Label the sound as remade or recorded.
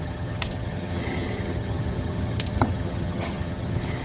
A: remade